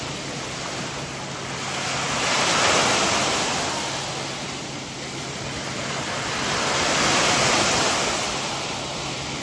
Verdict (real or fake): real